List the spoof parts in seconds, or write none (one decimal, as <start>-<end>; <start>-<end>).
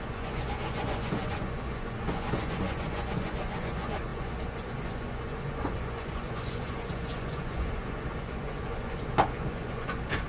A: 0.0-10.3